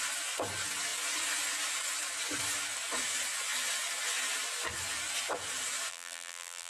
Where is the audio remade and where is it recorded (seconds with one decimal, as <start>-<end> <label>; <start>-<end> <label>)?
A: 0.0-5.9 recorded; 5.9-6.7 remade